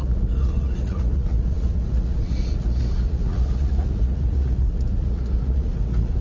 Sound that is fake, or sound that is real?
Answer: fake